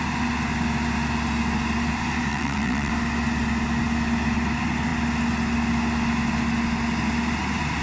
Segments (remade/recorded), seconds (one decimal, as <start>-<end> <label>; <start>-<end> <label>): 0.0-2.3 recorded; 2.3-2.9 remade; 2.9-7.8 recorded